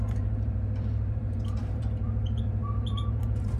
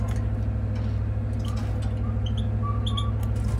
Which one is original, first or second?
second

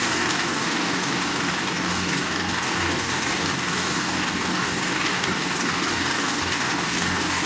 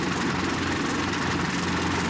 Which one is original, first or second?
second